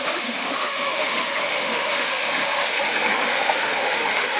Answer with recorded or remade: remade